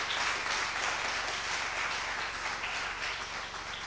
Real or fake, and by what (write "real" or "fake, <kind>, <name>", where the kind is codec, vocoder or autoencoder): real